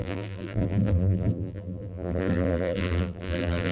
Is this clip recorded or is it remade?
remade